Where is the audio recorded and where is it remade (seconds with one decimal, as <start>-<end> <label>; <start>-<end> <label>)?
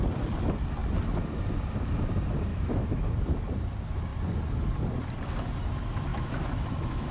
0.0-2.5 recorded; 2.5-3.1 remade; 3.1-6.1 recorded; 6.1-7.1 remade